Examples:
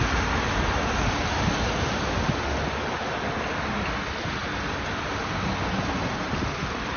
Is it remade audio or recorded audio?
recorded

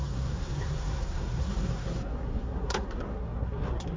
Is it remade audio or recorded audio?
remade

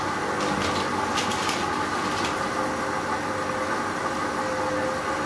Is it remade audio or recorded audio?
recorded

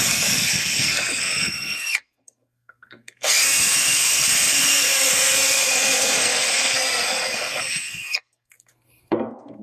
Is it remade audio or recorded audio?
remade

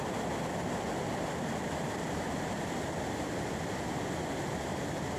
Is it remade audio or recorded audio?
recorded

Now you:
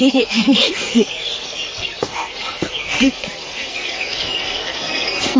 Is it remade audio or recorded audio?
remade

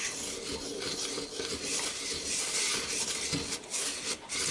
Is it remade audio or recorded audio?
recorded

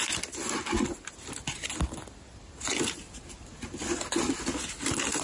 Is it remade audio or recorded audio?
recorded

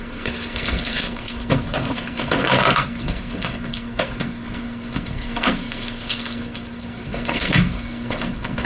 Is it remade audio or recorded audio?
remade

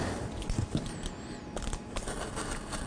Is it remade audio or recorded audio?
recorded